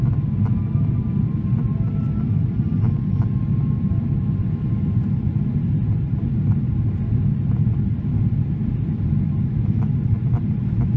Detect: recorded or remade recorded